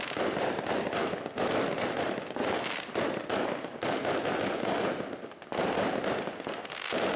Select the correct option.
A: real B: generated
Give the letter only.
A